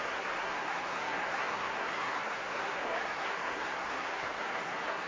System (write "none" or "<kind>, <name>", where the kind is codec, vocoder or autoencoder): codec, SNAC